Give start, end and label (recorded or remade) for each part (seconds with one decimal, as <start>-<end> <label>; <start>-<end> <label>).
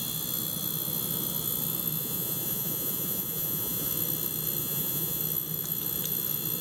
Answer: 0.0-2.0 recorded; 2.0-3.9 remade; 3.9-4.6 recorded; 4.6-5.2 remade; 5.2-6.6 recorded